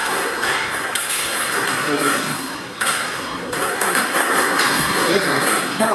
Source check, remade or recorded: remade